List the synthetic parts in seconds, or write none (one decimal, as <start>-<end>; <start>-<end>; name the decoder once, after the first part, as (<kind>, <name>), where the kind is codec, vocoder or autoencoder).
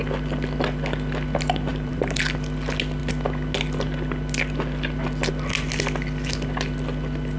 1.7-2.2 (vocoder, BigVGAN v2)